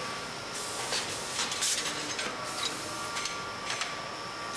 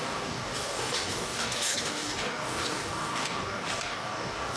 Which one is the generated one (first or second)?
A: second